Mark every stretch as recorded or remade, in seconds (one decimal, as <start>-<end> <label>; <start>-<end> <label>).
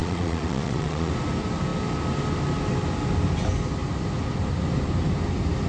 0.0-1.1 remade; 1.1-5.7 recorded